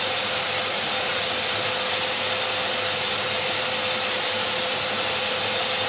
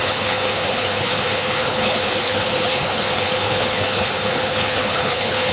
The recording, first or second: first